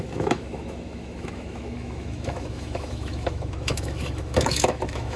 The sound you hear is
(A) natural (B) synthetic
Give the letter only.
B